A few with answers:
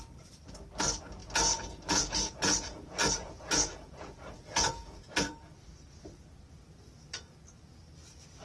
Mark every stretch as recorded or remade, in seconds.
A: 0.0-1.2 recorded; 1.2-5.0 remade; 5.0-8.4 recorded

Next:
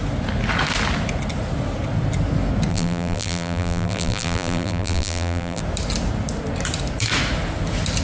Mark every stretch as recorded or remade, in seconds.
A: 0.0-2.7 recorded; 2.7-5.6 remade; 5.6-8.0 recorded

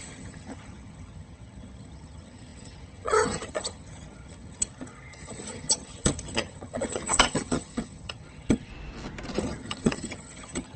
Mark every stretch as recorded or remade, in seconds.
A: 0.0-8.7 remade; 8.7-9.4 recorded; 9.4-10.8 remade

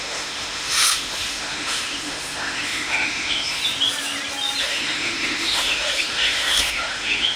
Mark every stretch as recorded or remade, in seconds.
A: 0.0-3.6 remade; 3.6-4.6 recorded; 4.6-7.4 remade